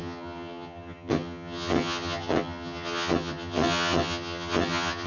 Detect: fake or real fake